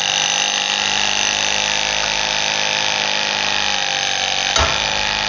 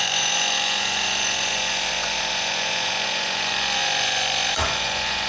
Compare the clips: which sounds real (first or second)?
first